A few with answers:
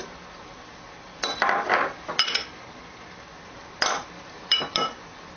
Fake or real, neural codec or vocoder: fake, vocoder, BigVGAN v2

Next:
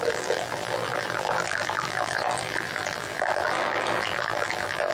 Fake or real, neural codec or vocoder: fake, vocoder, BigVGAN v2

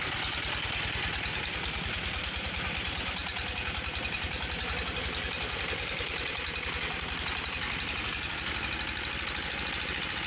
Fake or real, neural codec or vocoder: fake, vocoder, BigVGAN v2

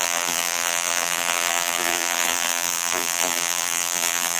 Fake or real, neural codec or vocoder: fake, vocoder, BigVGAN v2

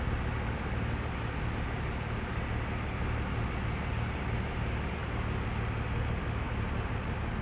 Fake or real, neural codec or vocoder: real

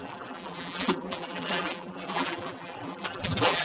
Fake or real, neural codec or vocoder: fake, vocoder, BigVGAN v2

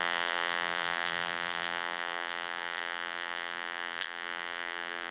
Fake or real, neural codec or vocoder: fake, vocoder, BigVGAN v2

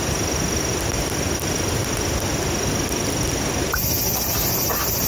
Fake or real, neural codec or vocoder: real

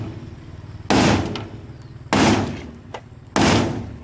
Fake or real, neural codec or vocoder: real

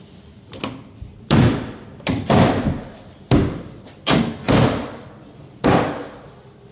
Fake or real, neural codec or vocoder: fake, vocoder, BigVGAN v2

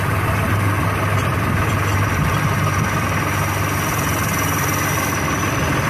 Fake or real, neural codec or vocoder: fake, vocoder, BigVGAN v2